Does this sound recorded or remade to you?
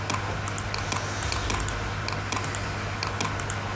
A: recorded